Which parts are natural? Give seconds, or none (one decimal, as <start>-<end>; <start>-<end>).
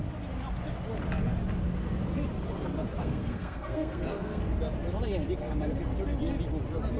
0.0-3.0; 4.4-7.0